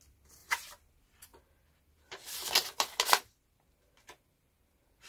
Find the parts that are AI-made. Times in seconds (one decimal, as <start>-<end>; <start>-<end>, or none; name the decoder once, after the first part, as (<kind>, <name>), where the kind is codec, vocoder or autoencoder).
none